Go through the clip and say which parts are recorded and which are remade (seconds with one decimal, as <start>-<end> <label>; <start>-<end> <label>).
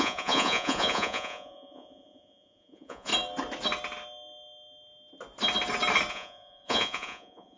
0.0-3.1 remade; 3.1-6.1 recorded; 6.1-7.6 remade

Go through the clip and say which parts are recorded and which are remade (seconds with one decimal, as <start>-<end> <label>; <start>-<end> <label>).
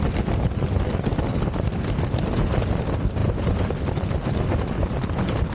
0.0-5.5 recorded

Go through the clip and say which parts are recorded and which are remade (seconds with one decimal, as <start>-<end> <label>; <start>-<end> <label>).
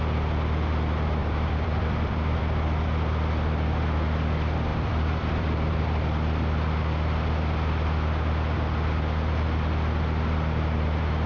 0.0-1.2 recorded; 1.2-2.4 remade; 2.4-4.7 recorded; 4.7-5.8 remade; 5.8-11.3 recorded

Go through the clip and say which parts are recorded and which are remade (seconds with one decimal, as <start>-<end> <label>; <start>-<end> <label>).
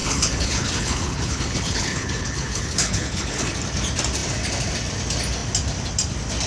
0.0-3.5 remade; 3.5-6.5 recorded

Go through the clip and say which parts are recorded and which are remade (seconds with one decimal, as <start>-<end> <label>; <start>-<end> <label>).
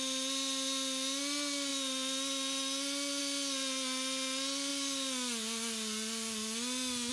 0.0-7.1 recorded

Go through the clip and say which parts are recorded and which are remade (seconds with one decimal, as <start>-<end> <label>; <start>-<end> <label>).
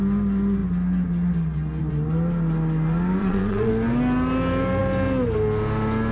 0.0-3.2 recorded; 3.2-3.7 remade; 3.7-6.1 recorded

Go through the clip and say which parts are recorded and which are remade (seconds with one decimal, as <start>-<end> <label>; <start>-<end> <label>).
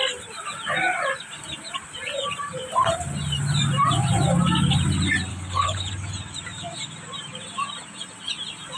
0.0-5.3 recorded; 5.3-5.9 remade; 5.9-8.8 recorded